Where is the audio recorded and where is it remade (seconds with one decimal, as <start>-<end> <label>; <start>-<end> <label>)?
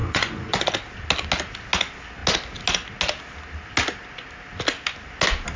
0.0-0.7 remade; 0.7-5.6 recorded